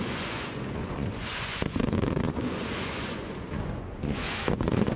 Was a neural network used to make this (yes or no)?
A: yes